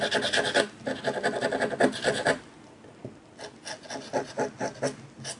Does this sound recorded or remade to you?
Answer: recorded